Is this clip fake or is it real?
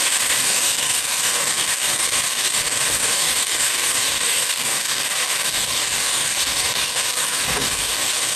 fake